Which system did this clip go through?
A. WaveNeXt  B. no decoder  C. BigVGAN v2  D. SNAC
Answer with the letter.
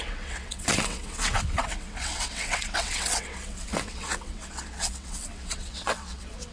A